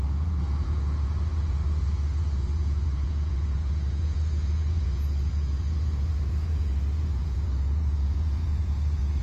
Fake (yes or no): yes